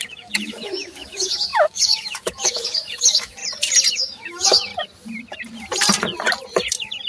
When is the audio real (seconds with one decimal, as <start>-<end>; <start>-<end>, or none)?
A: 3.4-3.9; 4.7-7.1